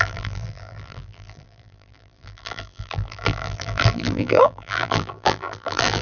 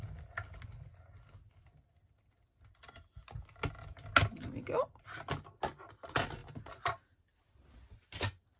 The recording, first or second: second